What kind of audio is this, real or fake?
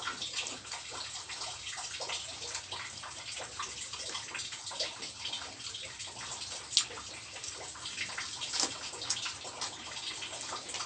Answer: real